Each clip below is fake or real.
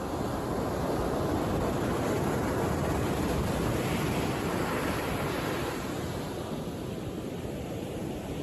real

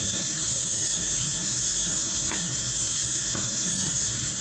fake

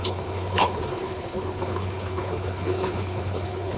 fake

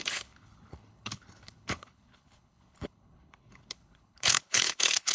fake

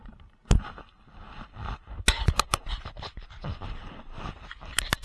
real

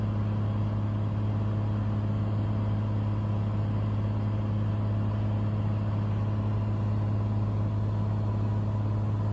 real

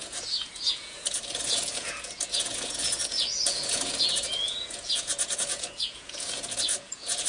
fake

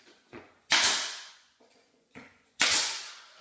fake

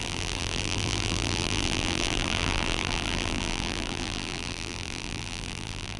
fake